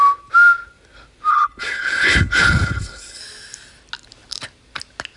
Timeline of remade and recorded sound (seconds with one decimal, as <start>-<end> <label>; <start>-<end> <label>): 0.0-1.3 recorded; 1.3-3.2 remade; 3.2-5.2 recorded